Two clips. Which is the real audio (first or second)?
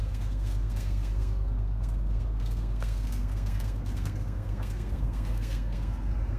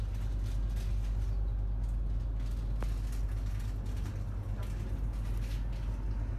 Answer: second